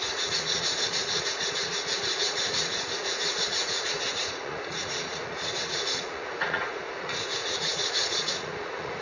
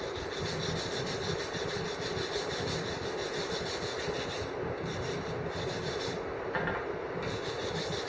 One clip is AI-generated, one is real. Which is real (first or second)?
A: second